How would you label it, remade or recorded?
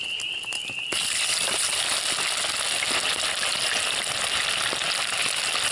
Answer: recorded